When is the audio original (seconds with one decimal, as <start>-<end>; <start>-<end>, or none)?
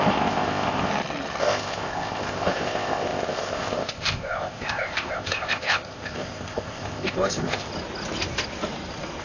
0.9-1.4; 7.7-9.2